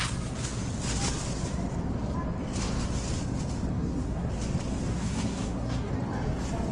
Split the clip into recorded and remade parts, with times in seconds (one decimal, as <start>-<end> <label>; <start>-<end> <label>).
0.0-3.7 recorded; 3.7-4.3 remade; 4.3-4.9 recorded; 4.9-5.9 remade; 5.9-6.7 recorded